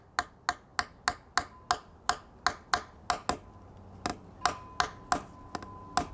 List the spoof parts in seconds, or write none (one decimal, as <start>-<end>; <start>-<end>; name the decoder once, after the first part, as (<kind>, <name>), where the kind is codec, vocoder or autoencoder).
none